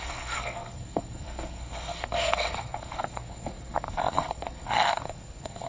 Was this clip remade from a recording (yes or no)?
yes